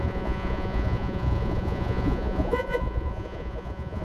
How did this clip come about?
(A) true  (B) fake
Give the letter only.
B